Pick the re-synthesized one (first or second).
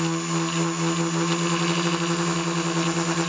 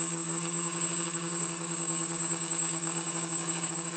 second